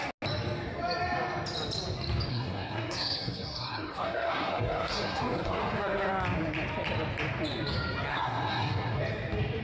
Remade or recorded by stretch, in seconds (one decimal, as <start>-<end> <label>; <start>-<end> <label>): 0.0-2.3 recorded; 2.3-6.1 remade; 6.1-8.1 recorded; 8.1-9.0 remade; 9.0-9.6 recorded